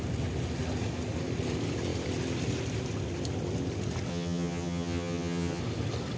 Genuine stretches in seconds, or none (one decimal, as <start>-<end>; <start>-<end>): 0.0-4.1; 5.6-6.2